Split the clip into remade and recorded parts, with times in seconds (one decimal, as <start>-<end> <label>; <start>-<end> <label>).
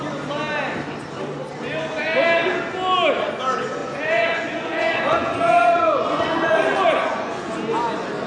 0.0-3.8 recorded; 3.8-7.5 remade; 7.5-8.3 recorded